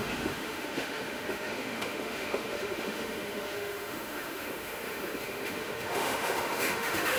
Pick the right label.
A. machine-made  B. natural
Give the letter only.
A